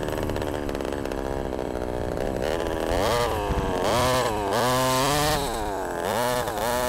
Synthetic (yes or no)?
no